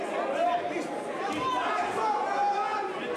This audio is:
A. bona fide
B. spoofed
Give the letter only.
A